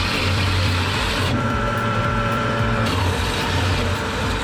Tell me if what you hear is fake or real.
fake